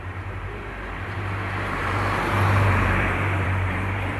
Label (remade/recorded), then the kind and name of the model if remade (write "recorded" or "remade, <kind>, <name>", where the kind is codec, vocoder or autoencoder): remade, vocoder, BigVGAN v2